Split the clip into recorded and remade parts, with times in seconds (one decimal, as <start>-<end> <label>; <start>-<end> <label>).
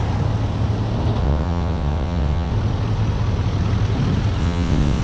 0.0-1.2 recorded; 1.2-2.5 remade; 2.5-4.4 recorded; 4.4-5.0 remade